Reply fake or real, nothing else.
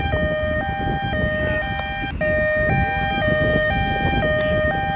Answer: real